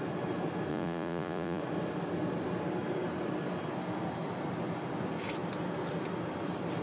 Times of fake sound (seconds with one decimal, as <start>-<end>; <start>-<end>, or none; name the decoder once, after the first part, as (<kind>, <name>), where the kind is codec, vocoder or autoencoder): 0.7-1.6 (vocoder, Vocos)